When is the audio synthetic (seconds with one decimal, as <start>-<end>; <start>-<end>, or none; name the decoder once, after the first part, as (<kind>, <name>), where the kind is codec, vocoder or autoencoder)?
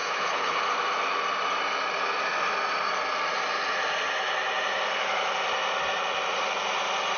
0.0-0.6 (codec, HILCodec)